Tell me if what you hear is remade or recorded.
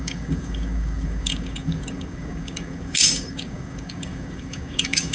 remade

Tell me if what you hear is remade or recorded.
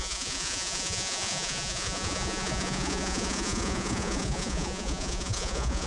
remade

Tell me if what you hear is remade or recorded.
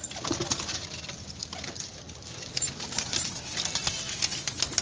recorded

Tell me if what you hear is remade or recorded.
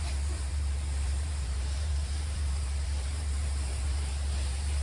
remade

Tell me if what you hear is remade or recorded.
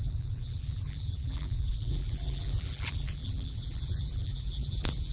remade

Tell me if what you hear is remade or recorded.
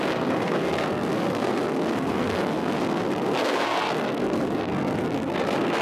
remade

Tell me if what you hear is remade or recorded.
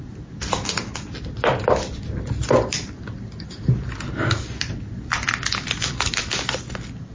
recorded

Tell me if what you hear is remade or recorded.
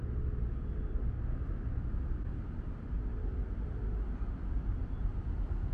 recorded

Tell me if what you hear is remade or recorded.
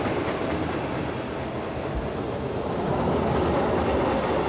recorded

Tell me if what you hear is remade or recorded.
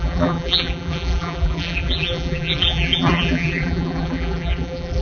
remade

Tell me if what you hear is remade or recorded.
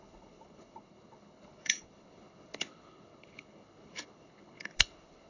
remade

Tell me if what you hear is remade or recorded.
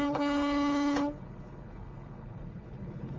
remade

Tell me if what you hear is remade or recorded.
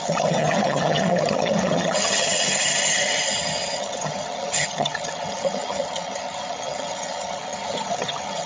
remade